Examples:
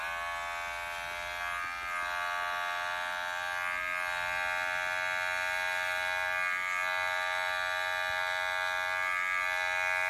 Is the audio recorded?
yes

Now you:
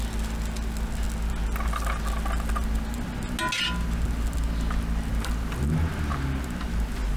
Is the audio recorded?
yes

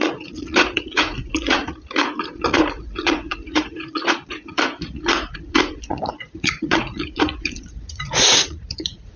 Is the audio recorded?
no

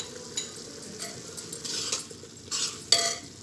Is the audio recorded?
yes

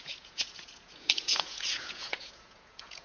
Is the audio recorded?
no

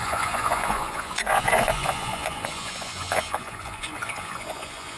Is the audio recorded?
no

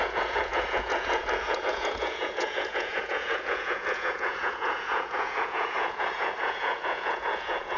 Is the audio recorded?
no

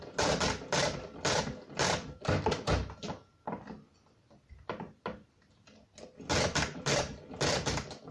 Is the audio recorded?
yes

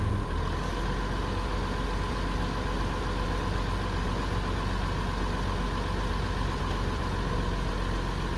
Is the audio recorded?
yes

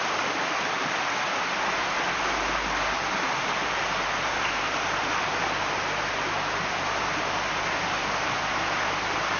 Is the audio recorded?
yes